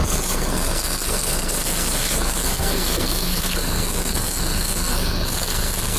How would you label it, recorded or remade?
remade